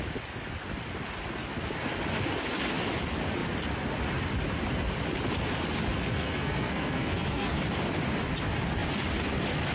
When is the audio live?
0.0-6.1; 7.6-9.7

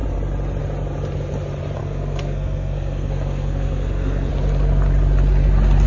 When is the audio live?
0.0-1.8; 4.3-5.9